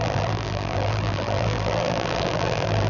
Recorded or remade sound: remade